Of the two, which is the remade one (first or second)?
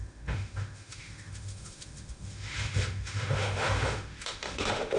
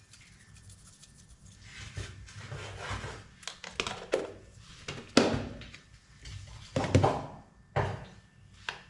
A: first